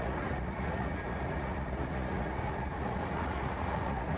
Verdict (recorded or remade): remade